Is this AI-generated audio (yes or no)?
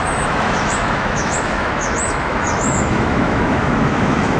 yes